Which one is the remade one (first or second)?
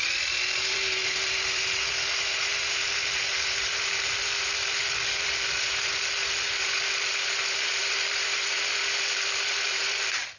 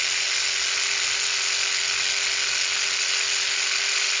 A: first